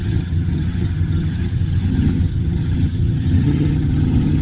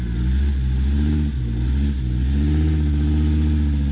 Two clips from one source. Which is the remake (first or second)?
first